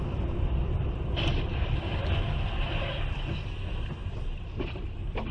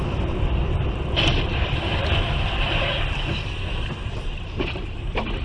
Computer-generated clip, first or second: second